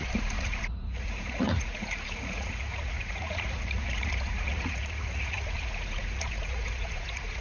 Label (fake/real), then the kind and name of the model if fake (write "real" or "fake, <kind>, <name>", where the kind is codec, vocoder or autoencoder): fake, vocoder, Vocos